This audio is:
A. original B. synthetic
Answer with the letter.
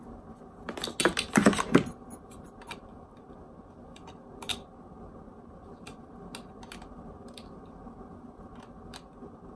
A